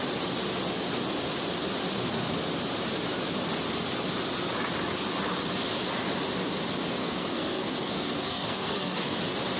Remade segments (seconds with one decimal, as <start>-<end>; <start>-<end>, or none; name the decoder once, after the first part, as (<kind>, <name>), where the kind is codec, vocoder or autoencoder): 7.0-9.2 (codec, SNAC)